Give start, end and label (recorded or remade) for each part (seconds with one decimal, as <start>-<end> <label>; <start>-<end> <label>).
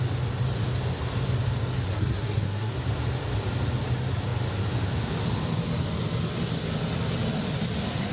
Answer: 0.0-1.9 recorded; 1.9-2.7 remade; 2.7-8.1 recorded